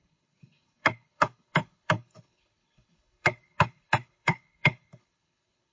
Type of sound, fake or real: fake